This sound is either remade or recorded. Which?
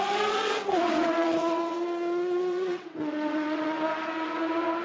remade